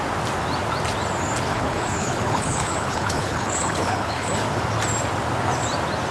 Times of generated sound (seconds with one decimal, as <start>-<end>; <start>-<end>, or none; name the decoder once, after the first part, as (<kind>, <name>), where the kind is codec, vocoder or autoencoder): 1.5-4.3 (codec, HILCodec)